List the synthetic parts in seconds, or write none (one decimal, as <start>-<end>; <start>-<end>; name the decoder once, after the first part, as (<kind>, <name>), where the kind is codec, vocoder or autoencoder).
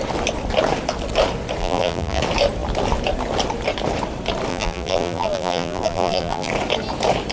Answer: 1.6-2.2 (vocoder, BigVGAN v2); 4.5-6.5